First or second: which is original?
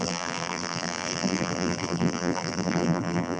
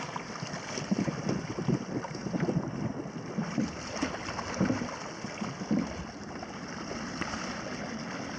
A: second